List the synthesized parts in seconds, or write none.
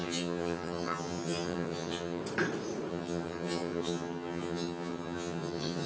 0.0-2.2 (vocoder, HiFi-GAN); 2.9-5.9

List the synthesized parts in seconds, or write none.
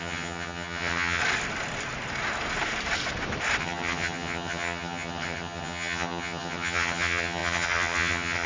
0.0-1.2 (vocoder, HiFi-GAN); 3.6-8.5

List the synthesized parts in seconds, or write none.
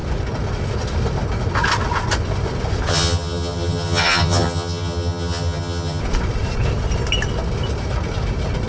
2.9-6.0 (vocoder, HiFi-GAN)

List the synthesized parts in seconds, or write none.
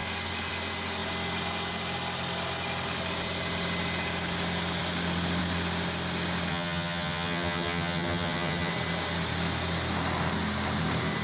6.5-8.7 (vocoder, HiFi-GAN)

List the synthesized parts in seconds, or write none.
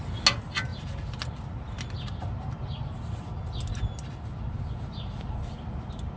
none